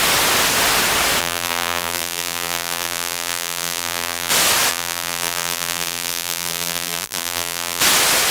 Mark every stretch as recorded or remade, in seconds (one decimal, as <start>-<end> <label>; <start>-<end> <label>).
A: 0.0-1.2 recorded; 1.2-4.3 remade; 4.3-4.7 recorded; 4.7-7.8 remade; 7.8-8.3 recorded